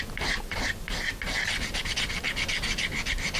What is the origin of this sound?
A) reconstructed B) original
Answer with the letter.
B